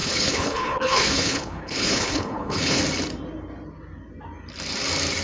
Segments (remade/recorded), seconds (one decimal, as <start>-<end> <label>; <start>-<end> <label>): 0.0-2.8 remade; 2.8-5.2 recorded